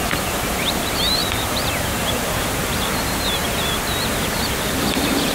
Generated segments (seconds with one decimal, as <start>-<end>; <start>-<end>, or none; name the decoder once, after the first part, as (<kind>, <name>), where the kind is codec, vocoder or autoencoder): 0.0-5.3 (vocoder, BigVGAN v2)